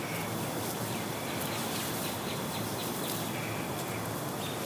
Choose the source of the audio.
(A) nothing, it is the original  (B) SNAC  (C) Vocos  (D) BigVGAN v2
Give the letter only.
A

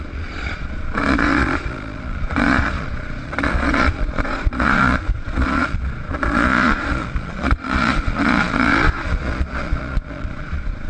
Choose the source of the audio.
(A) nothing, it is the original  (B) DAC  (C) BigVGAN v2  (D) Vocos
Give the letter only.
D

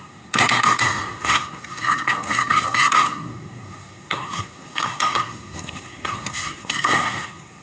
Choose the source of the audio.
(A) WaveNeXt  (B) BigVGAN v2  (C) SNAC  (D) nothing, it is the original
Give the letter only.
C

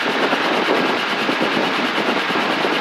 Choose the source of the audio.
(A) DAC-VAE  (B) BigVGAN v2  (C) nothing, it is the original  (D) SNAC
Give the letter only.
C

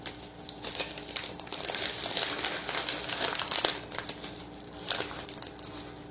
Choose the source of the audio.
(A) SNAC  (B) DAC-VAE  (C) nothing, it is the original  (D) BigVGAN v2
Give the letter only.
C